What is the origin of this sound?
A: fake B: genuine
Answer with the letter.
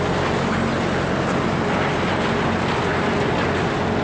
B